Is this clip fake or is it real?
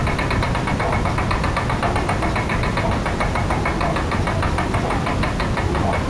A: real